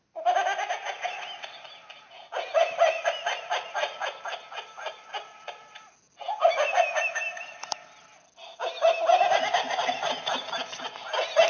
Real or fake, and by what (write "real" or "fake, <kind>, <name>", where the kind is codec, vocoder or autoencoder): real